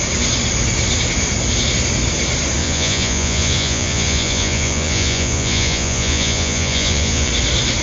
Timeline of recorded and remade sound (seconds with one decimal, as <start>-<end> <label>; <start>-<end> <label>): 0.0-2.6 recorded; 2.6-7.3 remade; 7.3-7.8 recorded